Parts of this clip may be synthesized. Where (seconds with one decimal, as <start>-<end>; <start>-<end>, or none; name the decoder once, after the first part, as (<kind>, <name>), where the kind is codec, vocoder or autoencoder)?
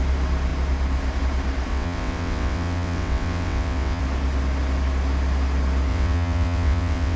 1.7-4.0 (vocoder, WaveNeXt); 5.9-7.2